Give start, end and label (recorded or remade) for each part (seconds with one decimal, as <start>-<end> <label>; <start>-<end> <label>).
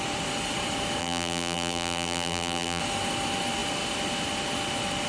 0.0-1.0 recorded; 1.0-2.8 remade; 2.8-5.1 recorded